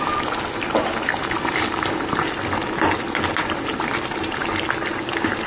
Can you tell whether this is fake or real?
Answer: real